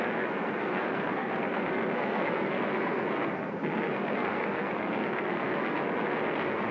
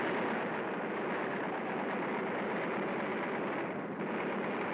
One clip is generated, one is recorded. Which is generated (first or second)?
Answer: first